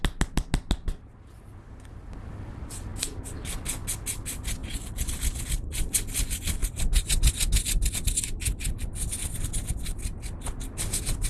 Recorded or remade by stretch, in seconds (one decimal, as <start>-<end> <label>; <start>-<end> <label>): 0.0-4.6 recorded; 4.6-5.2 remade; 5.2-11.3 recorded